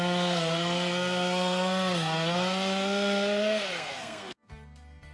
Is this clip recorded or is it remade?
remade